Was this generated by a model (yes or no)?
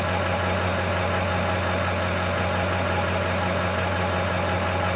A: no